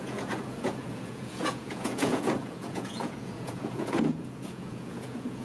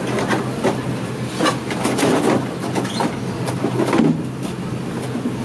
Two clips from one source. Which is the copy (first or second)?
first